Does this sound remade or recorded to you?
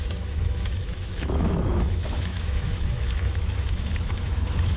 remade